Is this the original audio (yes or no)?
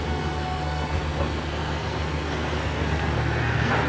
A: no